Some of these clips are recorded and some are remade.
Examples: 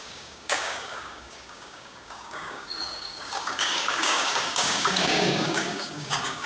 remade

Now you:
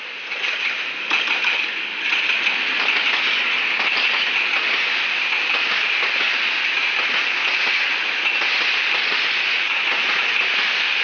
recorded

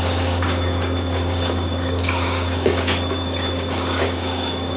remade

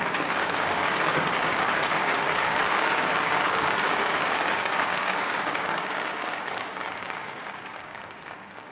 remade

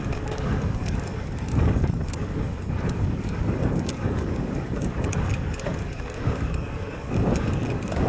remade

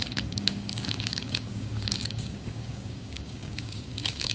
remade